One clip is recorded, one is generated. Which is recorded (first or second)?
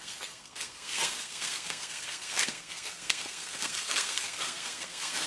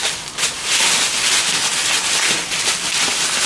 second